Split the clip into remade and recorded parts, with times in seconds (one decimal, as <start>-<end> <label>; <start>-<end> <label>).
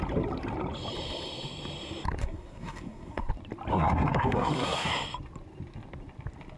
0.0-2.2 recorded; 2.2-3.3 remade; 3.3-3.7 recorded; 3.7-4.9 remade; 4.9-6.6 recorded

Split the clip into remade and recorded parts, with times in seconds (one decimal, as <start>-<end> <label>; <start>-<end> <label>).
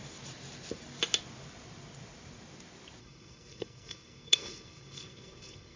0.0-3.0 recorded; 3.0-5.8 remade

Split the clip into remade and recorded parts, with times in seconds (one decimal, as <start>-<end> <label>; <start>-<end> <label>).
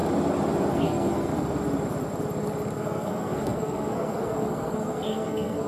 0.0-0.7 recorded; 0.7-1.3 remade; 1.3-2.8 recorded; 2.8-5.7 remade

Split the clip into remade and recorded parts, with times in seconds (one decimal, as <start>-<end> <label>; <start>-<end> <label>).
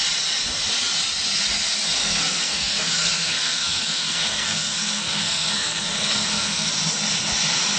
0.0-2.0 recorded; 2.0-6.7 remade; 6.7-7.8 recorded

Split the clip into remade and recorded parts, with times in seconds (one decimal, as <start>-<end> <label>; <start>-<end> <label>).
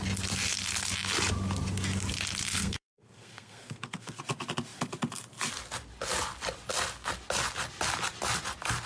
0.0-2.5 recorded; 2.5-4.2 remade; 4.2-8.9 recorded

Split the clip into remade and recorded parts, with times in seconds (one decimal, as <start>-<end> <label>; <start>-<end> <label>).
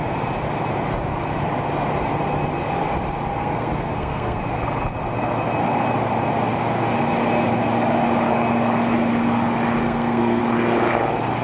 0.0-3.4 recorded; 3.4-4.4 remade; 4.4-9.8 recorded; 9.8-10.4 remade; 10.4-11.4 recorded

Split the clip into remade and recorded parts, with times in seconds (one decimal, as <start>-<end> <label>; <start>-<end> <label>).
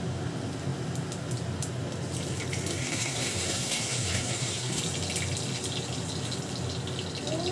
0.0-2.7 recorded; 2.7-4.8 remade; 4.8-7.5 recorded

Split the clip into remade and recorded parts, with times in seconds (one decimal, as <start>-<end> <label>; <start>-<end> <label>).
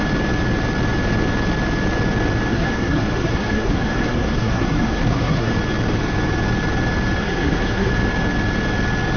0.0-2.5 recorded; 2.5-5.5 remade; 5.5-7.2 recorded; 7.2-7.9 remade; 7.9-9.2 recorded